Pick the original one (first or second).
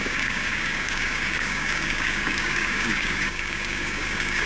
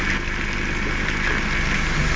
second